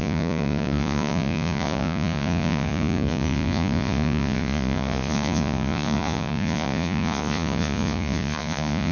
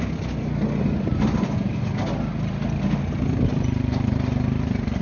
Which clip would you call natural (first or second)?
second